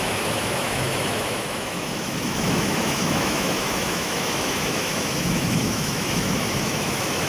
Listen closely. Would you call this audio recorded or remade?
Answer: remade